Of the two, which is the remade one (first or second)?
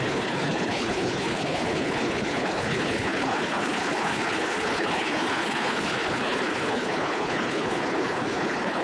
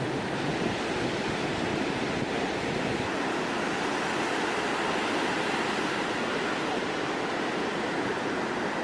first